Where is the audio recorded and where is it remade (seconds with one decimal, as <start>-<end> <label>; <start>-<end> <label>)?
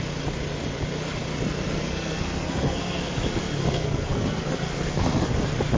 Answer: 0.0-1.8 recorded; 1.8-5.3 remade; 5.3-5.8 recorded